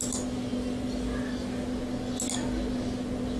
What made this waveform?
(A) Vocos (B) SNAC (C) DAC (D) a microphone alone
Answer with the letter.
D